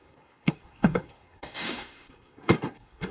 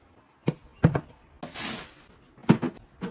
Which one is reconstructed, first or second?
first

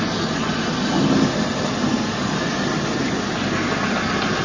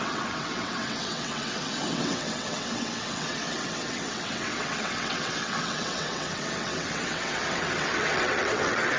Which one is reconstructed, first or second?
second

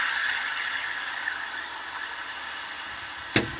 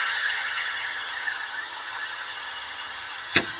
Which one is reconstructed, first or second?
second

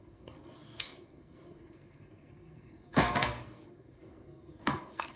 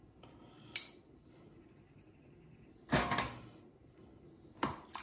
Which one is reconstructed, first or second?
first